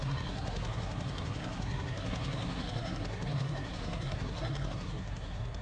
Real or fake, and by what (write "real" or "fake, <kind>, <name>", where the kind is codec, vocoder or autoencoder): fake, codec, SNAC